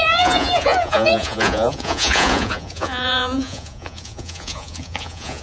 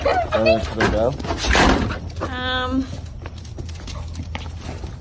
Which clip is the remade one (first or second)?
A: first